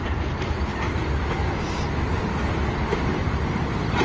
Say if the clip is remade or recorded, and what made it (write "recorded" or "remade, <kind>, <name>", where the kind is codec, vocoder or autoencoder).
recorded